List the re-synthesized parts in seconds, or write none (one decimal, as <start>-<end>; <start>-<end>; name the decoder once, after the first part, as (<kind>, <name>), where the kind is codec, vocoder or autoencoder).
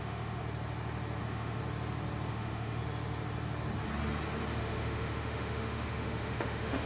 0.0-0.4 (autoencoder, DAC-VAE); 1.2-1.6; 2.3-2.8; 4.6-6.9